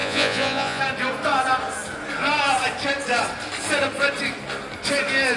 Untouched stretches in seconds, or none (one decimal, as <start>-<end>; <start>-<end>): 0.8-5.4